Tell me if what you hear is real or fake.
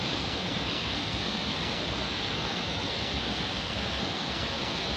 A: fake